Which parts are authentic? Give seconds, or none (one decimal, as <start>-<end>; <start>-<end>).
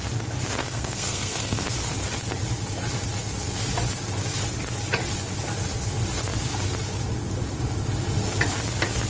0.0-0.6; 1.6-9.1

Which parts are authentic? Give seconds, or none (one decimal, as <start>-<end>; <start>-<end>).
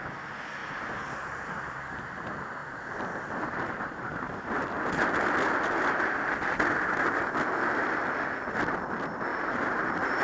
0.0-9.3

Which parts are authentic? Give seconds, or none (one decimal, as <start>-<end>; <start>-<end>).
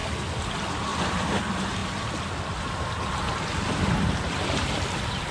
0.0-0.9; 1.4-5.3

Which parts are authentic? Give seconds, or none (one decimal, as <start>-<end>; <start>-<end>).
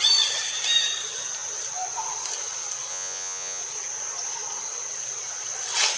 0.0-2.9; 3.6-6.0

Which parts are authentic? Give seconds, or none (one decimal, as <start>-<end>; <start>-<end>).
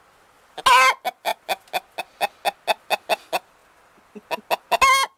0.0-5.2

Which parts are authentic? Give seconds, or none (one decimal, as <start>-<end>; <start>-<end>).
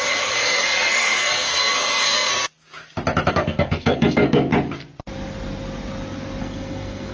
2.3-3.3; 4.5-6.4